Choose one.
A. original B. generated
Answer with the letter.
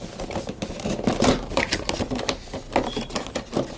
A